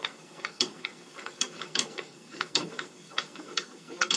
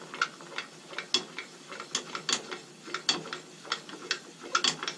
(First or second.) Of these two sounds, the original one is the second